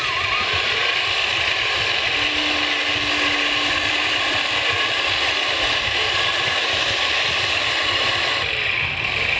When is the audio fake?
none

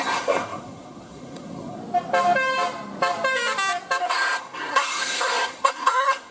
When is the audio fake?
0.0-1.8 (codec, SNAC); 4.0-6.3

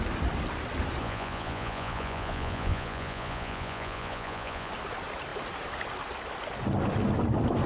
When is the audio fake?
1.0-4.7 (vocoder, Vocos)

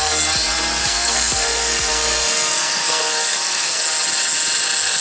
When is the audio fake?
0.8-3.8 (codec, SNAC)

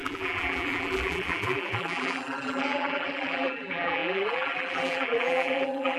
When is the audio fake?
0.0-6.0 (vocoder, BigVGAN v2)

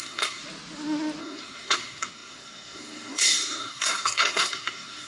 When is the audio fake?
0.0-0.4 (codec, SNAC); 1.2-5.1

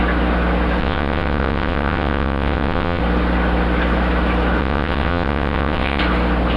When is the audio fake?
0.8-3.0 (vocoder, WaveNeXt); 4.6-6.0

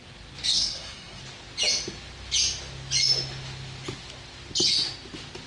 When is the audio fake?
0.5-1.2 (codec, SNAC)